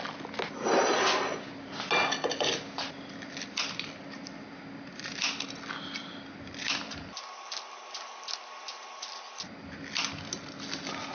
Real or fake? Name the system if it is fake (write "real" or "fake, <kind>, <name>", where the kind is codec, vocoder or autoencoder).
real